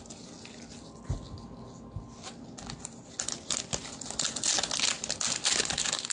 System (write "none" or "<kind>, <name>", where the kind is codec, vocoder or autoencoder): none